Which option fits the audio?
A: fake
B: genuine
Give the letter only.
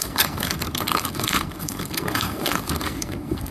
A